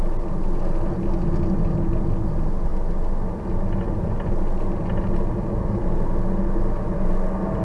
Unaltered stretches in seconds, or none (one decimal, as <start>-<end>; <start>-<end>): 0.0-7.6